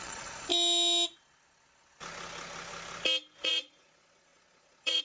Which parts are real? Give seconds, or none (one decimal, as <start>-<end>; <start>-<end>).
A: 0.5-3.5